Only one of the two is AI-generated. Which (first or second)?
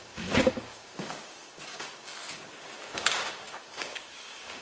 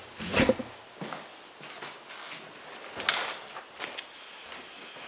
first